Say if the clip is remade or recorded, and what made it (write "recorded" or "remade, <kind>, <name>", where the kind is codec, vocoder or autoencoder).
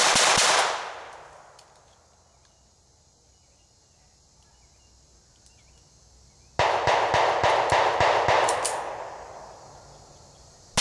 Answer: recorded